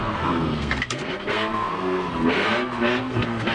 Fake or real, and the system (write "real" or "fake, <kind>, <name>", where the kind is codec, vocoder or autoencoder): fake, codec, SNAC